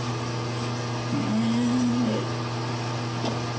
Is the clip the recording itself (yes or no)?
yes